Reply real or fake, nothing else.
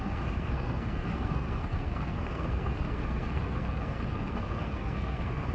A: fake